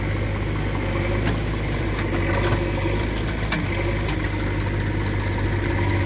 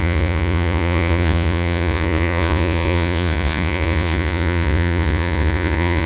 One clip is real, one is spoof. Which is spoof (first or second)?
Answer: second